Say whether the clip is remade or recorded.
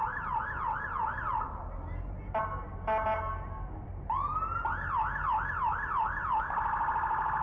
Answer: recorded